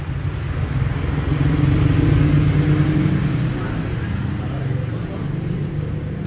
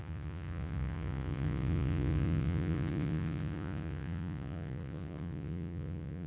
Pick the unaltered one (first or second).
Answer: first